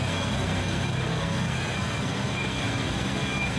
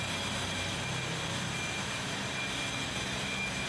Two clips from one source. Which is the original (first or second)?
second